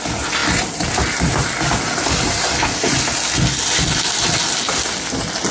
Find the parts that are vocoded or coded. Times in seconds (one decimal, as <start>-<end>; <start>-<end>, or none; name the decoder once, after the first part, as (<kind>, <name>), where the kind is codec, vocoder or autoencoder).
none